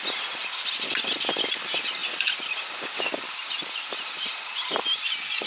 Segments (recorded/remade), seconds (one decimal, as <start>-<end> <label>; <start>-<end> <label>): 0.0-5.5 recorded